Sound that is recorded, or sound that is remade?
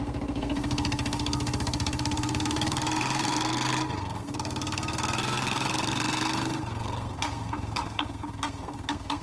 remade